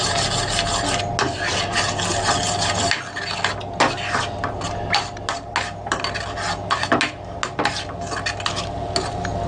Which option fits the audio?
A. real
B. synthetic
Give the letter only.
A